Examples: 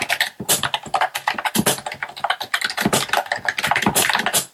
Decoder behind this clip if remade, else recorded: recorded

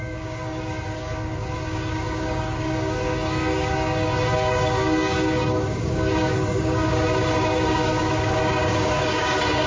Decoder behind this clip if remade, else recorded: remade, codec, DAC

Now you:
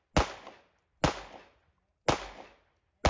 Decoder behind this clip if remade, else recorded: recorded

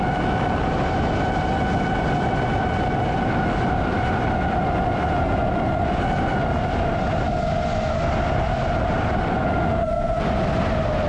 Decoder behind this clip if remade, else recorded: recorded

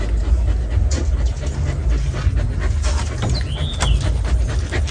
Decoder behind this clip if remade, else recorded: recorded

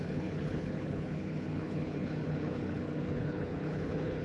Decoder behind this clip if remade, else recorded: remade, codec, HILCodec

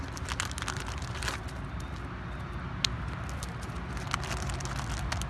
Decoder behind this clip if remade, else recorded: recorded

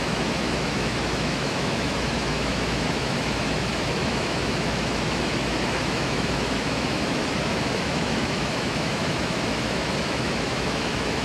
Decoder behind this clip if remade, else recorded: remade, autoencoder, DAC-VAE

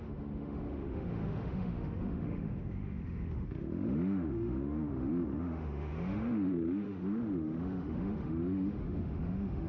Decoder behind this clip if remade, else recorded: remade, autoencoder, DAC-VAE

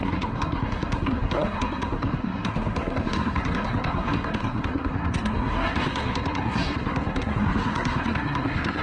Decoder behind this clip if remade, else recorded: remade, codec, SNAC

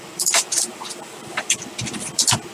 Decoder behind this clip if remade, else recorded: remade, vocoder, BigVGAN v2